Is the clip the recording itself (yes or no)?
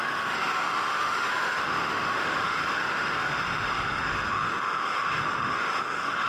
no